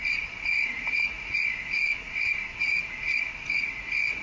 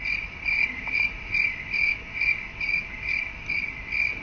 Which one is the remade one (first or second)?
first